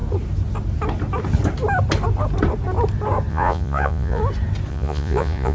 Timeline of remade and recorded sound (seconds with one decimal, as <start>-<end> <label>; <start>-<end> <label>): 0.0-3.3 recorded; 3.3-4.2 remade; 4.2-4.7 recorded; 4.7-5.5 remade